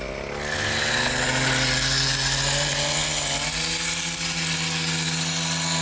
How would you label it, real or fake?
real